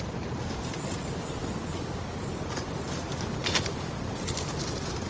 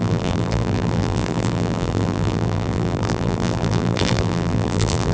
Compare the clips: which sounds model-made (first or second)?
second